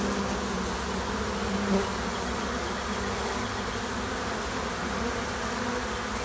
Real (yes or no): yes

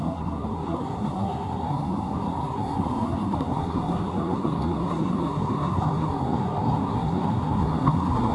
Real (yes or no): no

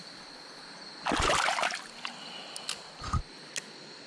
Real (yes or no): yes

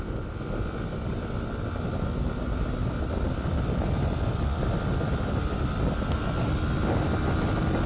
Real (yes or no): yes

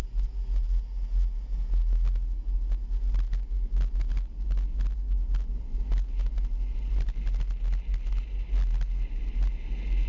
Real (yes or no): yes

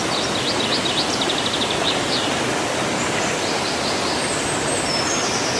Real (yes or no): yes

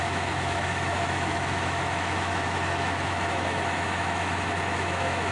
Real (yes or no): no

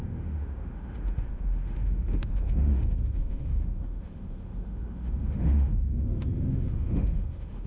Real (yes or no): no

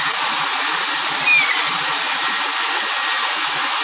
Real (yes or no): yes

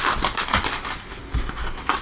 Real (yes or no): yes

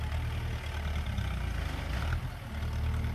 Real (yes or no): yes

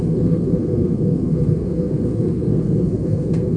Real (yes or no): no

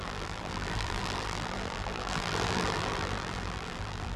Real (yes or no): no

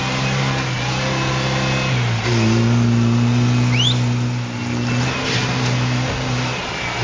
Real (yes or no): yes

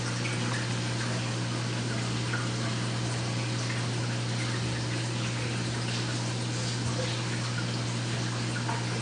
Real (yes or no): yes